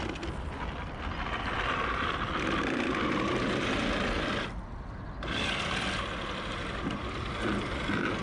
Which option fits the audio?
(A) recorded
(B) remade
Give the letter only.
A